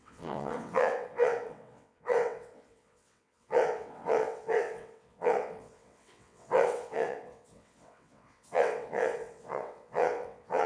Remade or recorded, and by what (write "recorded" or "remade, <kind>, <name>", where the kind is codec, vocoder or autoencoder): remade, vocoder, WaveNeXt